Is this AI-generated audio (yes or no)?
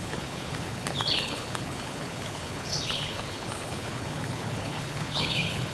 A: yes